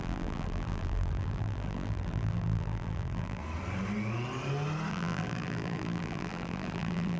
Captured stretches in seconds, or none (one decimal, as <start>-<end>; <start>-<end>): 3.4-4.9

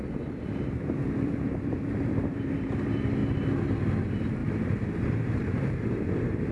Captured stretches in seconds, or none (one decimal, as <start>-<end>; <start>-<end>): 3.2-4.0; 4.4-5.0

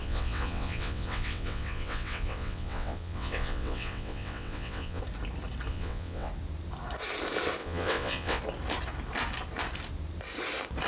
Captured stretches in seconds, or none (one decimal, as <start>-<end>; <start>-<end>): 5.0-5.7; 6.3-7.6; 8.4-10.9